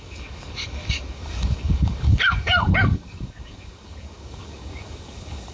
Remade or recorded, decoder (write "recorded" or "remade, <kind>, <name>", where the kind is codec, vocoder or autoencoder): remade, codec, DAC